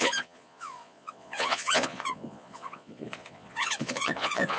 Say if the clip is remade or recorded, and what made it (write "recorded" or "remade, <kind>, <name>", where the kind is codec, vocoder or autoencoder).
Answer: remade, vocoder, Vocos